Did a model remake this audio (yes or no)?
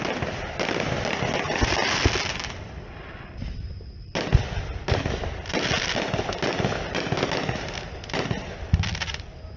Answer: no